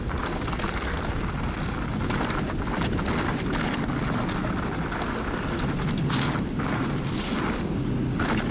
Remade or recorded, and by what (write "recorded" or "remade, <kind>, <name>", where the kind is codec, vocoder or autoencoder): recorded